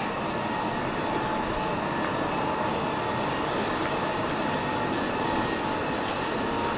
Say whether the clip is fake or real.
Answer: real